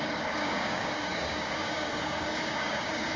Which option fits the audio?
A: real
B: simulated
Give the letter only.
B